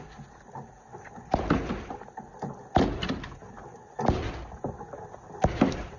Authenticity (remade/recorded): recorded